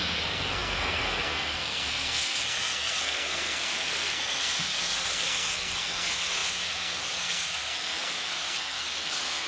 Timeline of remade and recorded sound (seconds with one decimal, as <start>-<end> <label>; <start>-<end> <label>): 0.0-9.5 remade

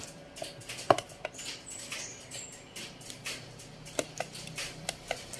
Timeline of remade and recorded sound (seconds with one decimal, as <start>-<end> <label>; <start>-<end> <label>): 0.0-3.2 remade; 3.2-4.9 recorded; 4.9-5.4 remade

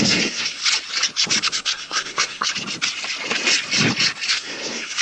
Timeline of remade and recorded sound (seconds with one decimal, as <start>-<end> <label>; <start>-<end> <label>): 0.0-0.6 remade; 0.6-1.4 recorded; 1.4-2.5 remade; 2.5-4.3 recorded; 4.3-5.0 remade

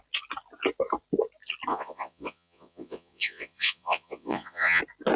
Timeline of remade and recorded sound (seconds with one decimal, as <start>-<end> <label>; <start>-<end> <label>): 0.0-1.7 recorded; 1.7-4.8 remade; 4.8-5.2 recorded

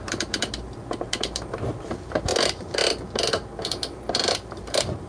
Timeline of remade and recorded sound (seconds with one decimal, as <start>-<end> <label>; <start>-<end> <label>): 0.0-5.1 recorded

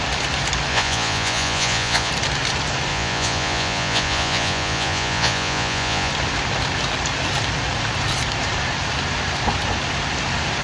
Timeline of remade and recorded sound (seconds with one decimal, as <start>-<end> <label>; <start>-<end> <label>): 0.0-0.7 recorded; 0.7-2.1 remade; 2.1-2.9 recorded; 2.9-6.1 remade; 6.1-10.6 recorded

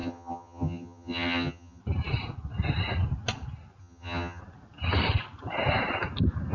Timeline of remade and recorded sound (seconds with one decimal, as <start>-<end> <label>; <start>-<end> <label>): 0.0-1.8 remade; 1.8-3.8 recorded; 3.8-4.4 remade; 4.4-6.5 recorded

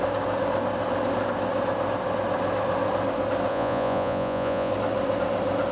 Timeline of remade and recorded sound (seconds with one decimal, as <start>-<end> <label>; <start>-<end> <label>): 0.0-3.5 recorded; 3.5-4.7 remade; 4.7-5.7 recorded